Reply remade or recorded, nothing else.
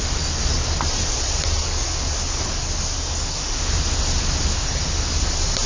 recorded